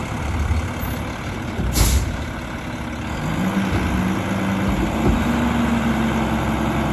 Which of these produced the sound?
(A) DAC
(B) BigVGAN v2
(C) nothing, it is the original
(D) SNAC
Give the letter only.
C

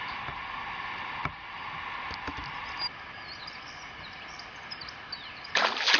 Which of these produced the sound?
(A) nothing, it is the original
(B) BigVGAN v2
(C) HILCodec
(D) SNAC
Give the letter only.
A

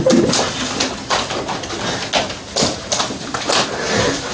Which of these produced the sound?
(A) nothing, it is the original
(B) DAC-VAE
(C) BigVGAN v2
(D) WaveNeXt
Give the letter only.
A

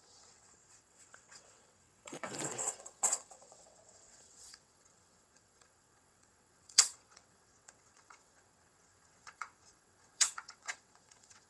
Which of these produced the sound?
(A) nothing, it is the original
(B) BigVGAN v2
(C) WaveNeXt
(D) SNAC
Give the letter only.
C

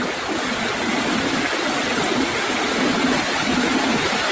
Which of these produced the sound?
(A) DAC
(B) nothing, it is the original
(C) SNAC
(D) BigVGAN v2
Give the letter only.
B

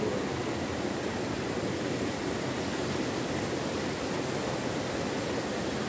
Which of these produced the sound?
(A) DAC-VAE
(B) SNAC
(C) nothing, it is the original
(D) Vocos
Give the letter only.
C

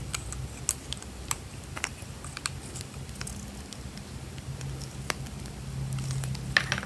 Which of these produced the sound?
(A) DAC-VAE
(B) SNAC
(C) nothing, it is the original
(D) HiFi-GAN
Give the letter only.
C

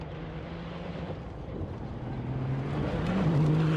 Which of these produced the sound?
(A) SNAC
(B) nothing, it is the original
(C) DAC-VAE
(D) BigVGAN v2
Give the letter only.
B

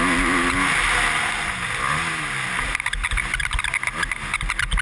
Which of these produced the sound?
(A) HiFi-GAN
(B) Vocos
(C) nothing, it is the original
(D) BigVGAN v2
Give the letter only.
C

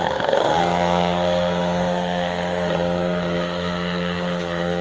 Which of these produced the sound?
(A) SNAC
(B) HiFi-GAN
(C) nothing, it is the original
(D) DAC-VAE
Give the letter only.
A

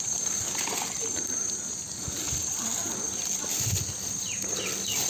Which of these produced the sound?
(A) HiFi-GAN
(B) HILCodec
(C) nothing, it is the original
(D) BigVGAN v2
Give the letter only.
C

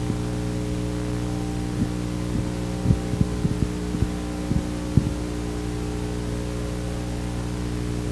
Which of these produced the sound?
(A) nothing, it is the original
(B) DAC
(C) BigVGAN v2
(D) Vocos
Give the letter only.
A